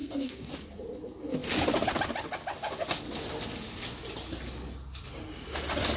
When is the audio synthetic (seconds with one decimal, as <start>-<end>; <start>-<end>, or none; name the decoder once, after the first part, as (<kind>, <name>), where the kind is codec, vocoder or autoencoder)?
0.0-0.5 (codec, SNAC)